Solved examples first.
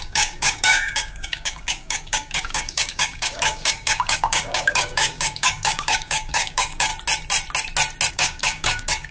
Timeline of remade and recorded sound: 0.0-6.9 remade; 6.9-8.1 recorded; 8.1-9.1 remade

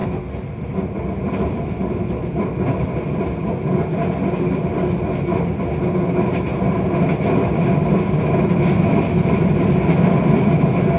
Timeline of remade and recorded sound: 0.0-11.0 recorded

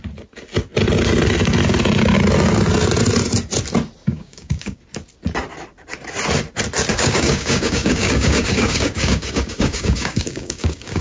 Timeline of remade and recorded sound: 0.0-4.1 recorded; 4.1-4.8 remade; 4.8-6.9 recorded; 6.9-11.0 remade

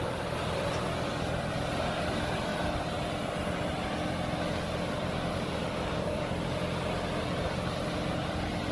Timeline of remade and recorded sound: 0.0-5.6 recorded; 5.6-6.3 remade; 6.3-8.7 recorded